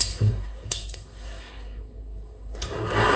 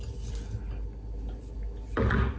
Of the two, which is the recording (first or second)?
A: second